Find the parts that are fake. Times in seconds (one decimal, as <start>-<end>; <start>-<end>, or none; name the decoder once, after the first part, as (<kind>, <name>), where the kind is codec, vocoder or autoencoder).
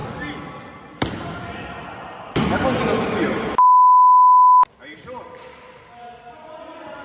0.0-2.5 (vocoder, BigVGAN v2)